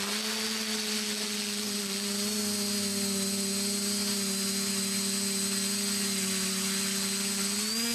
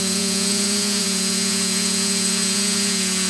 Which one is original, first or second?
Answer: first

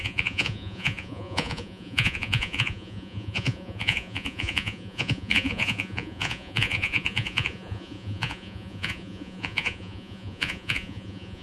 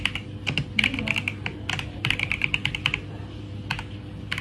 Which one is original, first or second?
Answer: second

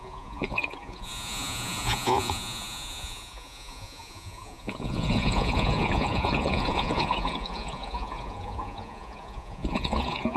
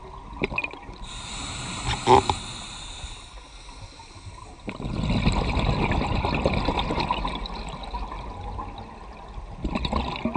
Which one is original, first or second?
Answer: second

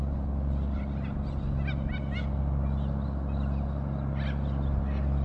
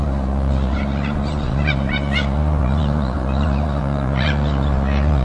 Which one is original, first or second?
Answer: first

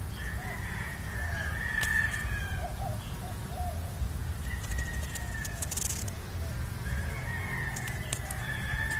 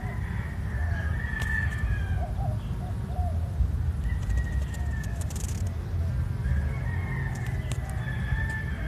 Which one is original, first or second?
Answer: second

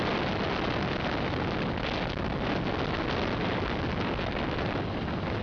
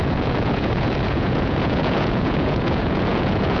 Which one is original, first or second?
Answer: first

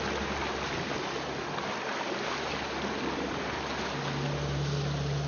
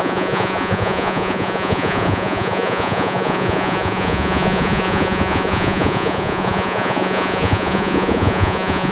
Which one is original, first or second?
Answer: first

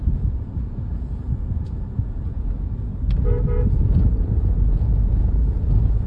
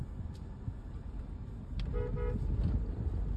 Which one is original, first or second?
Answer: second